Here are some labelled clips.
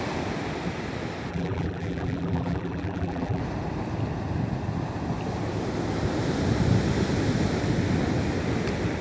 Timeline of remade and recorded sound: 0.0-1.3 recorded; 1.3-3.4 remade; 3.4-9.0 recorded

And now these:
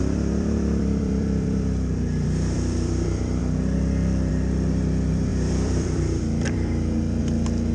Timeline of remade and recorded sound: 0.0-3.4 remade; 3.4-4.3 recorded; 4.3-7.7 remade

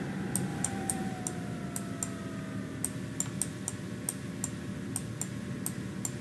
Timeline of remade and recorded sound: 0.0-0.5 recorded; 0.5-1.2 remade; 1.2-6.2 recorded

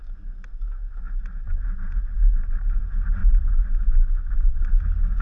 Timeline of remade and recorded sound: 0.0-3.2 recorded; 3.2-4.8 remade; 4.8-5.2 recorded